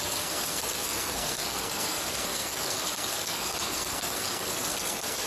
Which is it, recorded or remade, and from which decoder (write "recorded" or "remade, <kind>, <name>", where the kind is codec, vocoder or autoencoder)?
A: remade, codec, SNAC